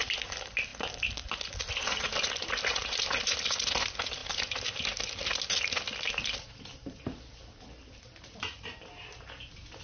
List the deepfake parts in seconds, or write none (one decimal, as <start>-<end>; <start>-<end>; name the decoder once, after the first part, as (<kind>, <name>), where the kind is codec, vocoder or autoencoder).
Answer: none